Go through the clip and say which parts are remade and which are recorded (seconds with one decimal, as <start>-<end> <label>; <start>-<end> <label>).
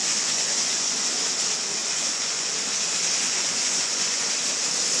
0.0-1.3 remade; 1.3-1.8 recorded; 1.8-2.5 remade; 2.5-3.2 recorded; 3.2-4.3 remade; 4.3-5.0 recorded